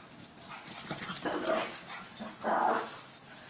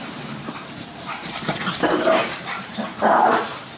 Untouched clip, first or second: first